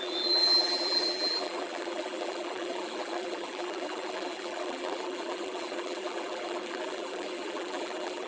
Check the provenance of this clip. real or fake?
fake